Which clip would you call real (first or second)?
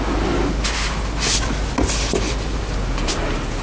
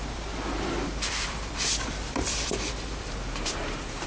first